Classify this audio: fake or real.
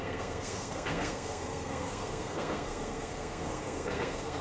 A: fake